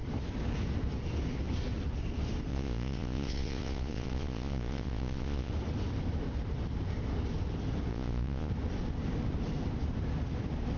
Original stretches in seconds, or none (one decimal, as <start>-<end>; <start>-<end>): 0.0-2.5; 5.5-7.9; 8.5-10.8